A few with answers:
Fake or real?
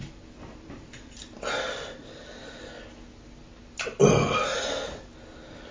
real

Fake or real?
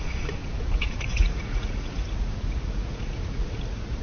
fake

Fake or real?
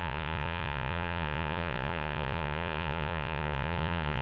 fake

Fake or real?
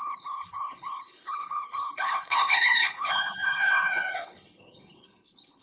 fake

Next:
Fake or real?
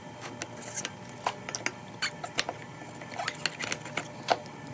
real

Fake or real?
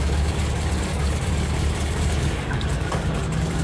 fake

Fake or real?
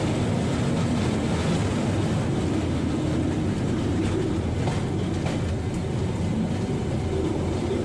real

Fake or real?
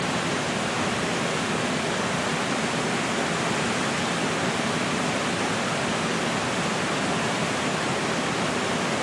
real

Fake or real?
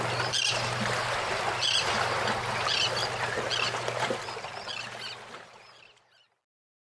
real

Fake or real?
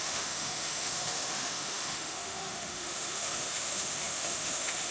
fake